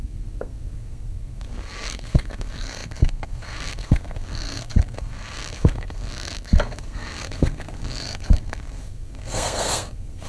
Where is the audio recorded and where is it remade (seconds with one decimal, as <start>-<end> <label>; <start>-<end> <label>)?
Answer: 0.0-10.3 remade